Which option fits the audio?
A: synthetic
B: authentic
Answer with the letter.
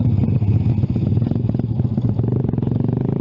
B